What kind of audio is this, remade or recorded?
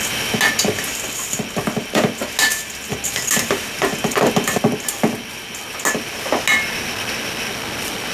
recorded